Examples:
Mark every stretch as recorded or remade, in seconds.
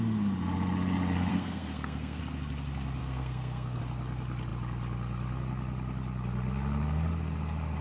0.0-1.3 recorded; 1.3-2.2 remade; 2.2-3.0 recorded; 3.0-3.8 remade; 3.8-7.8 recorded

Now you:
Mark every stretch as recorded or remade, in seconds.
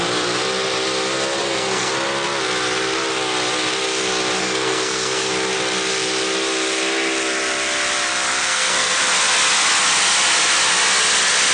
0.0-1.4 recorded; 1.4-1.9 remade; 1.9-4.4 recorded; 4.4-5.3 remade; 5.3-8.4 recorded; 8.4-9.0 remade; 9.0-11.5 recorded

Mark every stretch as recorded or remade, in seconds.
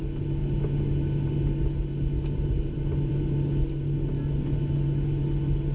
0.0-5.7 recorded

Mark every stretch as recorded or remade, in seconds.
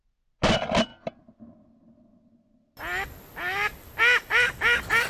0.0-5.1 recorded